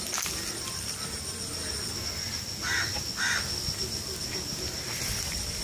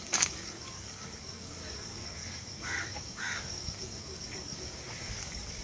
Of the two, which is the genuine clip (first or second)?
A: first